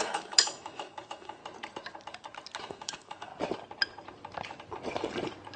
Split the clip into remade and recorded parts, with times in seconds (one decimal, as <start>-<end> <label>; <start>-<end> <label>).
0.0-1.4 remade; 1.4-2.6 recorded; 2.6-3.3 remade; 3.3-5.6 recorded